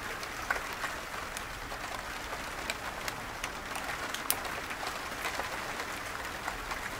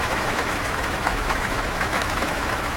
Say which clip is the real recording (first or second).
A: first